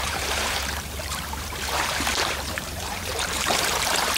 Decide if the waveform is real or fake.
fake